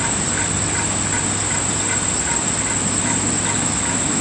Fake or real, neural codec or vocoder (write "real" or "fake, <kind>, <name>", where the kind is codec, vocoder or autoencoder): real